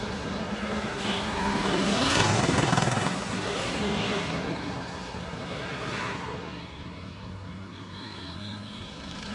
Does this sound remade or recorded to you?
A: remade